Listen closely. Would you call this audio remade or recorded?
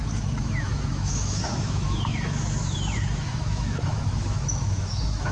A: remade